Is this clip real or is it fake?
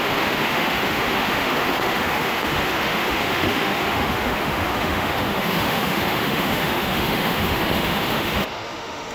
fake